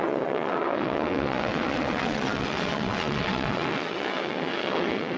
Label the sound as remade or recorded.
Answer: remade